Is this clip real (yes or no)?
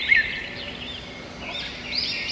yes